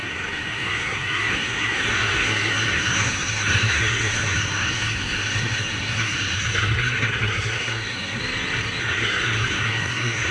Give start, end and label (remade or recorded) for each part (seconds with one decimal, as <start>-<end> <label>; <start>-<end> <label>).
0.0-8.2 remade; 8.2-8.8 recorded; 8.8-10.3 remade